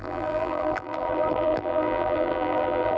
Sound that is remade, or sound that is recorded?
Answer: remade